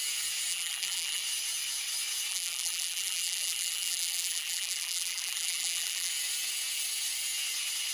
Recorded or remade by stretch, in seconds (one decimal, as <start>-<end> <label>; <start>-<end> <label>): 0.0-0.5 recorded; 0.5-1.2 remade; 1.2-2.3 recorded; 2.3-6.1 remade; 6.1-7.9 recorded